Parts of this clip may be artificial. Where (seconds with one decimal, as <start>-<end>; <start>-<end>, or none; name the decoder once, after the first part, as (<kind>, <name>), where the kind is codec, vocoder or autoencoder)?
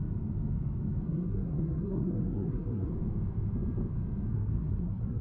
1.0-2.9 (codec, SNAC); 4.3-5.2